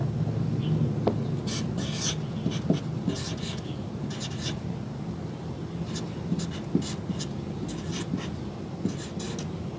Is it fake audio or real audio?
real